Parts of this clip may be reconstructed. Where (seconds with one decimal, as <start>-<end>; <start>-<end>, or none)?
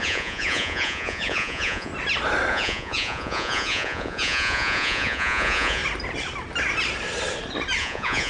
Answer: 0.0-1.9; 2.5-5.8; 7.8-8.3